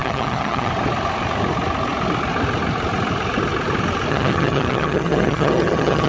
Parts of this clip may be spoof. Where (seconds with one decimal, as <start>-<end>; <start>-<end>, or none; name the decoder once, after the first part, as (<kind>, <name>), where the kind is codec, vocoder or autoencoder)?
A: 0.0-0.7 (vocoder, HiFi-GAN); 4.1-6.1